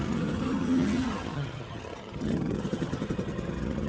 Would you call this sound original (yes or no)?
no